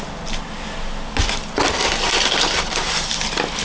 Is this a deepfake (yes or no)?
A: no